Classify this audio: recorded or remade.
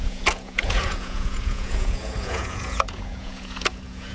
remade